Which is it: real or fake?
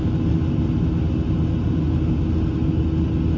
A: real